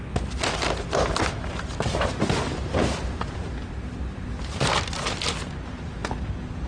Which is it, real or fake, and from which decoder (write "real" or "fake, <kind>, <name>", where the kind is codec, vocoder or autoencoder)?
real